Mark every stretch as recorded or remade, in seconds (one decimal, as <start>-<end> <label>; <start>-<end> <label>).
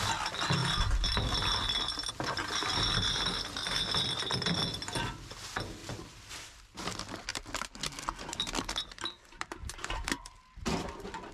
0.0-5.8 recorded; 5.8-6.6 remade; 6.6-7.3 recorded; 7.3-10.6 remade; 10.6-11.3 recorded